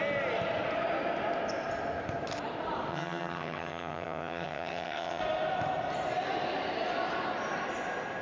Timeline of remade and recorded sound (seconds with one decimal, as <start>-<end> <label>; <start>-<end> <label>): 0.0-2.9 recorded; 2.9-5.2 remade; 5.2-8.2 recorded